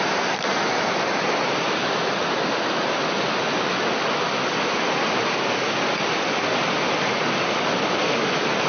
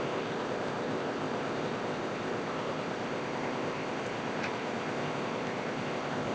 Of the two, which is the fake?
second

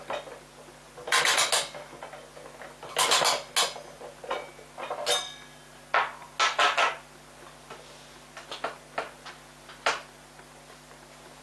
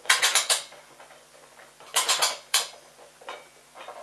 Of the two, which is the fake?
second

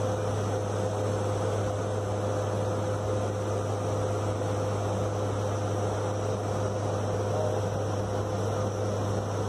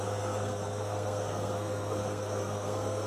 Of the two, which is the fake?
second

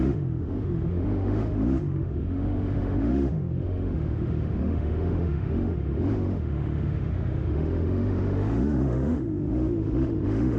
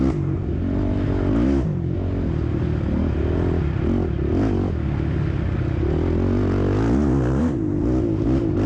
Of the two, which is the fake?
first